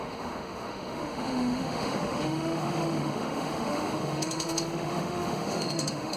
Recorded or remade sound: remade